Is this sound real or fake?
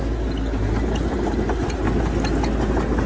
real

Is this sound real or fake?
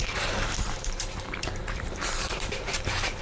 fake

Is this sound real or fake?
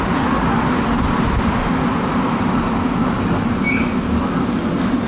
real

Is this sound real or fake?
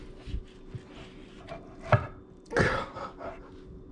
real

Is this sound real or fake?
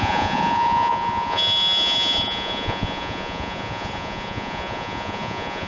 fake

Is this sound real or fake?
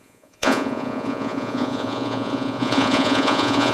fake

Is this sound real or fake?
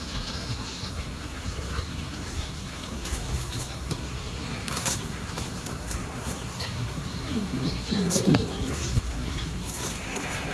fake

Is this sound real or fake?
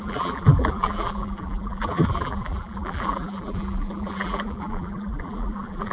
fake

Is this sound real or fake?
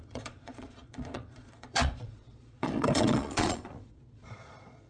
fake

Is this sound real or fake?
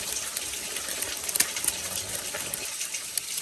real